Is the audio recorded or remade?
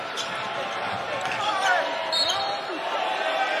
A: recorded